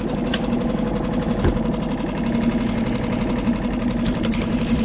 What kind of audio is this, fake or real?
real